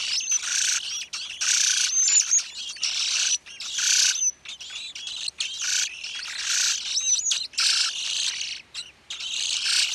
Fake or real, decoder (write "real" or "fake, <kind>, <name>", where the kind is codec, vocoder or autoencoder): real